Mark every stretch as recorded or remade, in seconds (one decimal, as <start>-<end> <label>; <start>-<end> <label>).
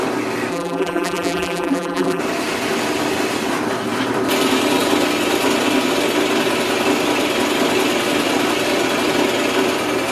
0.0-0.5 recorded; 0.5-2.2 remade; 2.2-10.1 recorded